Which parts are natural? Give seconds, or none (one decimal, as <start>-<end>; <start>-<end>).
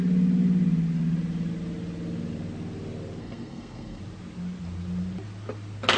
0.0-3.2; 4.0-6.0